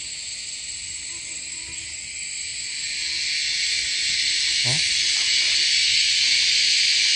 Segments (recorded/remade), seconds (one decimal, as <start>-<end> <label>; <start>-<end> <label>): 0.0-7.2 recorded